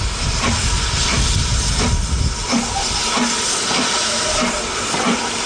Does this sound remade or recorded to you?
recorded